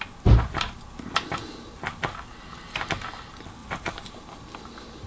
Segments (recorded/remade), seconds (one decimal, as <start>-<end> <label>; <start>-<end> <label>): 0.0-3.6 recorded; 3.6-4.1 remade; 4.1-5.1 recorded